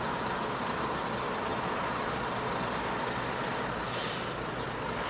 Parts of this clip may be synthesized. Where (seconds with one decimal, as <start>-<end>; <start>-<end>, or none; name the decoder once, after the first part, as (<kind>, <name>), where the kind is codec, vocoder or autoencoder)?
none